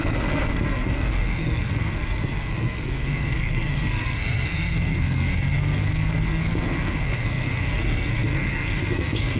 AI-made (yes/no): yes